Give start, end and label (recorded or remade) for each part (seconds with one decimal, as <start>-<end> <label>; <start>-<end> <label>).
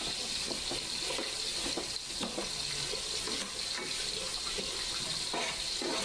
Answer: 0.0-4.3 recorded; 4.3-5.0 remade; 5.0-6.0 recorded